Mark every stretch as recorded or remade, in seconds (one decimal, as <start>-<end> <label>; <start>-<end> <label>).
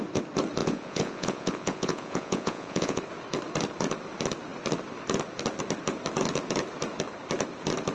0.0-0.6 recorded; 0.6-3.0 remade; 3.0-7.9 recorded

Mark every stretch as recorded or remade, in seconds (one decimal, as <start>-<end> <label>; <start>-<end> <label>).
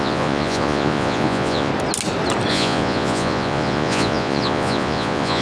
0.0-1.7 remade; 1.7-2.5 recorded; 2.5-5.4 remade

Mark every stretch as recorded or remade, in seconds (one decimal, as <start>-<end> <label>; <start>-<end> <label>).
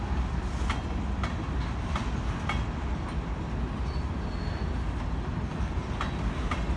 0.0-6.8 recorded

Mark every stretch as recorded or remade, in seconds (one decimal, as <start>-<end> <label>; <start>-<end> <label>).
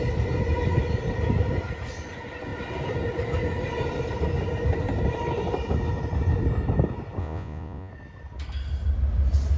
0.0-7.2 recorded; 7.2-7.9 remade; 7.9-9.6 recorded